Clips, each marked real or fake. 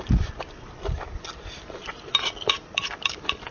real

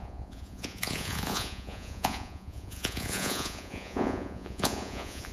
fake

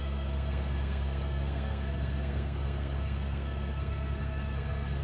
fake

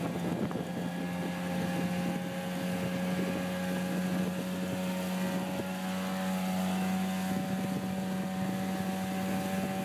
real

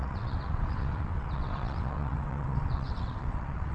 fake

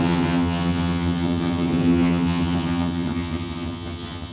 fake